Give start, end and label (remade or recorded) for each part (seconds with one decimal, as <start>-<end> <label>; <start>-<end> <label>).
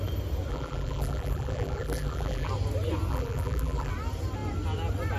0.0-0.5 recorded; 0.5-2.5 remade; 2.5-3.1 recorded; 3.1-3.9 remade; 3.9-5.2 recorded